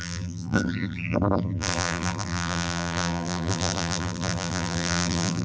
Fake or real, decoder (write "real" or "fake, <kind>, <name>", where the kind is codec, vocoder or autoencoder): fake, vocoder, BigVGAN v2